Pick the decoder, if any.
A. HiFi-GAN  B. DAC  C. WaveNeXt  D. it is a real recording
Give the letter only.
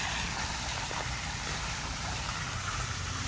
D